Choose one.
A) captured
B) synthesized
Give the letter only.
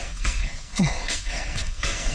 B